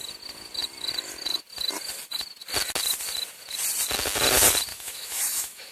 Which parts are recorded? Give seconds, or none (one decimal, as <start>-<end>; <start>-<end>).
0.0-4.7